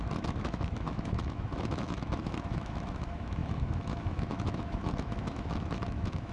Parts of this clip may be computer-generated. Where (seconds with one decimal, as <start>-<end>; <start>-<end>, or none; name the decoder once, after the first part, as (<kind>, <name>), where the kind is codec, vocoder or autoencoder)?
0.0-6.3 (autoencoder, DAC-VAE)